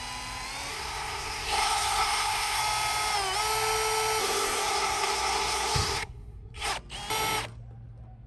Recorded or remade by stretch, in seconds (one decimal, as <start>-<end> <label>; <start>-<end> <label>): 0.0-0.7 recorded; 0.7-2.6 remade; 2.6-4.2 recorded; 4.2-6.7 remade; 6.7-8.3 recorded